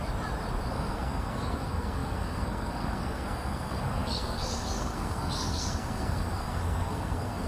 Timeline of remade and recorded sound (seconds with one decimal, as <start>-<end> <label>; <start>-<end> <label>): 0.0-0.7 recorded; 0.7-7.5 remade